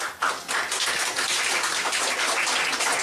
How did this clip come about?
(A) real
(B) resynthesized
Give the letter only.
A